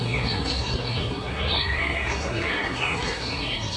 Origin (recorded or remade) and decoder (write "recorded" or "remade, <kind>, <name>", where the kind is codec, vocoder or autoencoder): remade, codec, SNAC